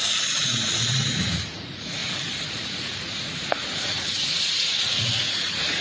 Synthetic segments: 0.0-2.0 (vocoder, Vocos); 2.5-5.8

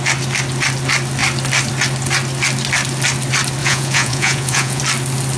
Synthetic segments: 3.6-4.8 (vocoder, Vocos)

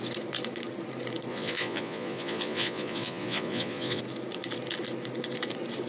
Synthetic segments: 1.3-4.0 (vocoder, Vocos)